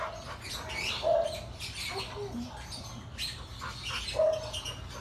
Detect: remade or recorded recorded